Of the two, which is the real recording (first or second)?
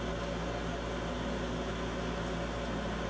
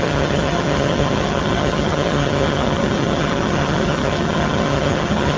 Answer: first